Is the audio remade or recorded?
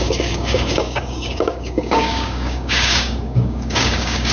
remade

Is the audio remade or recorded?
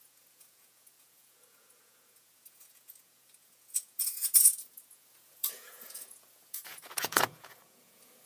remade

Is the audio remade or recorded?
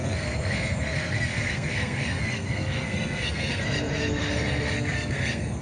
remade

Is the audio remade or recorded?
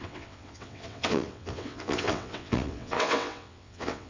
remade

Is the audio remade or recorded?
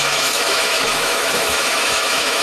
remade